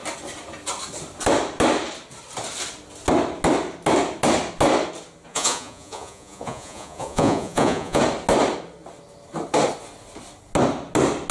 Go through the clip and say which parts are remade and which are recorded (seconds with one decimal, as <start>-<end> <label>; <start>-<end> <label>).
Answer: 0.0-5.3 recorded; 5.3-8.0 remade; 8.0-11.3 recorded